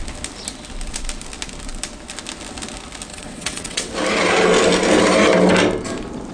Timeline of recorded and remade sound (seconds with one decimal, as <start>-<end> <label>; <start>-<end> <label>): 0.0-3.1 recorded; 3.1-3.9 remade; 3.9-6.3 recorded